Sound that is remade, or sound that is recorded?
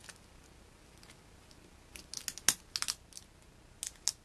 recorded